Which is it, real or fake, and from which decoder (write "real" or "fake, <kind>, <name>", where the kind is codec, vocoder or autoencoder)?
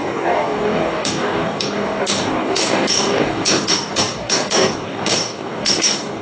fake, codec, DAC